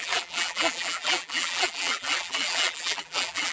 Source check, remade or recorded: remade